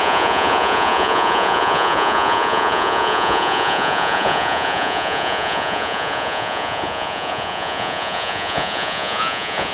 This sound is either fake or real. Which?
fake